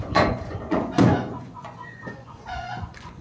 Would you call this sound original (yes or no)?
no